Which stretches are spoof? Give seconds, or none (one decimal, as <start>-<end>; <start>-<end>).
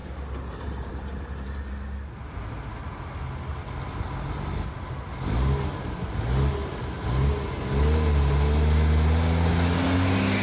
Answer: 0.0-1.7